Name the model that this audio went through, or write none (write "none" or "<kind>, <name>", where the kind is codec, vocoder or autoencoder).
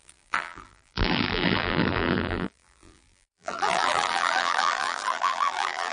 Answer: vocoder, BigVGAN v2